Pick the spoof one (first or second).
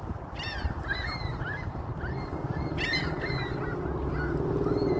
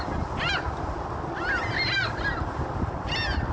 first